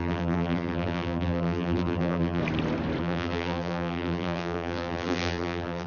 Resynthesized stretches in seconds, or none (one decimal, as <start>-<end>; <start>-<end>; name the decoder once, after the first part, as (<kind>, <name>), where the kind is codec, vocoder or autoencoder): 0.0-2.4 (vocoder, BigVGAN v2); 3.0-5.9